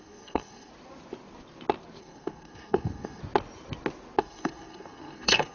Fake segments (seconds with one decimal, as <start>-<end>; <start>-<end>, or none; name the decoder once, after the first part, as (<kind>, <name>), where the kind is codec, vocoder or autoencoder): 0.0-0.7 (codec, SNAC); 2.0-3.2; 4.2-5.5